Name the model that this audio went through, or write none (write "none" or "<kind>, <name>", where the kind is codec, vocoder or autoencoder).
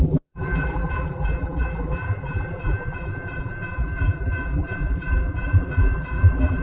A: vocoder, BigVGAN v2